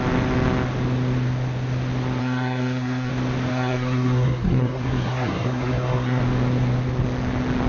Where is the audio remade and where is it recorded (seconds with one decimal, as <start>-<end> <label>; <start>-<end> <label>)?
0.0-2.2 recorded; 2.2-3.1 remade; 3.1-3.5 recorded; 3.5-6.2 remade; 6.2-7.7 recorded